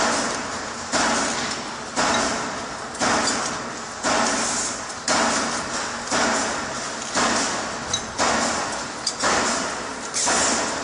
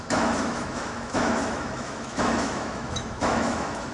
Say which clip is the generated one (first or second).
second